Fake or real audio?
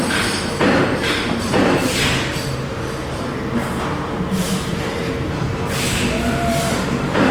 fake